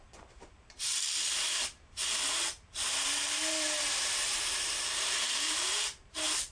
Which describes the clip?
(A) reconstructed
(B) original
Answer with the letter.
A